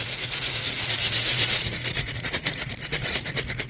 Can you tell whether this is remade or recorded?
remade